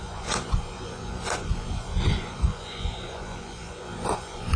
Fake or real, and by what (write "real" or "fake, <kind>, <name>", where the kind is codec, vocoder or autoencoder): fake, vocoder, Vocos